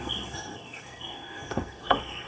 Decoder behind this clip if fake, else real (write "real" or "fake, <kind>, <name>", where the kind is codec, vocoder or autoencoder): fake, codec, SNAC